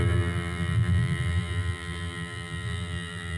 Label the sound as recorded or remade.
remade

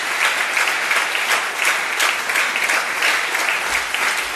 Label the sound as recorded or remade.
recorded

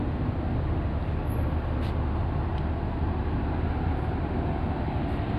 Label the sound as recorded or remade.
recorded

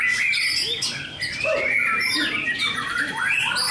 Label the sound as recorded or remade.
remade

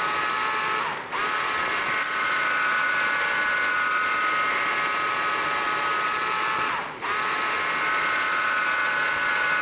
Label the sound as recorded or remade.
recorded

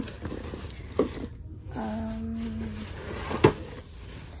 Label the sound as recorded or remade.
recorded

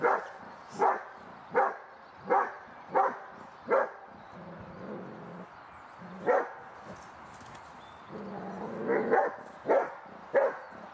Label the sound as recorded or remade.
recorded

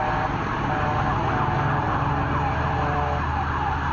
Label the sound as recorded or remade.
recorded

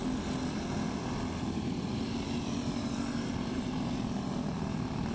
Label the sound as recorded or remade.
recorded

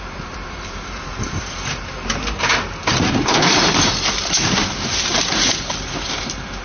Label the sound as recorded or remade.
remade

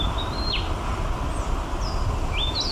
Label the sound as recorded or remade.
recorded